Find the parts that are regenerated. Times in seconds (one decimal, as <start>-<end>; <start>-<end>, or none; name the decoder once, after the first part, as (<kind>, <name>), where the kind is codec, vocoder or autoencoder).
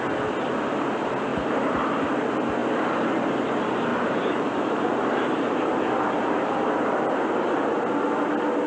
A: 1.3-2.1 (vocoder, BigVGAN v2); 3.9-7.5